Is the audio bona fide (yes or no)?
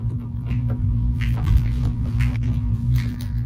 no